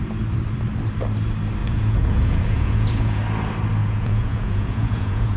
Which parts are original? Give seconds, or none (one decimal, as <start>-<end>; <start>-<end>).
0.0-1.6; 3.2-3.8